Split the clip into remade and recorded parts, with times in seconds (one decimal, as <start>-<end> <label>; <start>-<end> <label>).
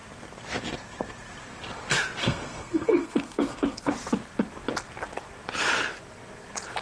0.0-2.2 recorded; 2.2-3.9 remade; 3.9-6.8 recorded